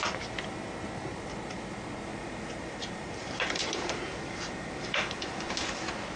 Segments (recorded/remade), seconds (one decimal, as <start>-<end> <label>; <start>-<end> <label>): 0.0-2.1 recorded; 2.1-5.8 remade; 5.8-6.2 recorded